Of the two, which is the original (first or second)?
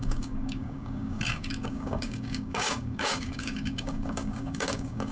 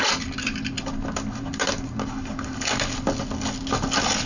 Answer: second